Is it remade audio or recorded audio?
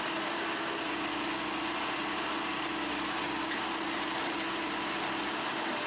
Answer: recorded